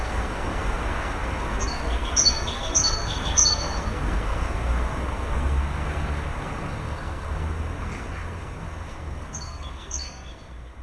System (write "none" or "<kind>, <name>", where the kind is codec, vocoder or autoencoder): codec, SNAC